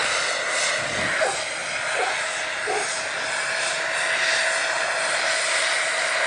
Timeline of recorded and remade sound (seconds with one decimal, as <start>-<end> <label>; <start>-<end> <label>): 0.0-6.3 recorded